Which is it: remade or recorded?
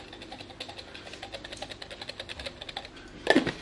recorded